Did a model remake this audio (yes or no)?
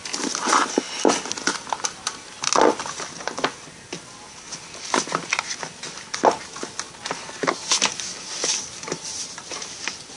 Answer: no